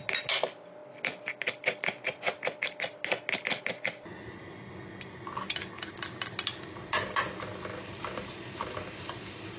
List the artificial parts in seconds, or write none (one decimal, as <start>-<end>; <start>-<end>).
none